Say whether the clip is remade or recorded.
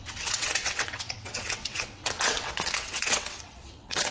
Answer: remade